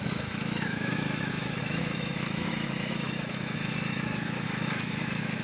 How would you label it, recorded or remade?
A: remade